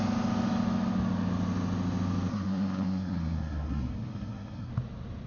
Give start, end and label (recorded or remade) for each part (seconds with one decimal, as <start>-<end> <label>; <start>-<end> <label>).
0.0-2.3 recorded; 2.3-4.7 remade; 4.7-5.3 recorded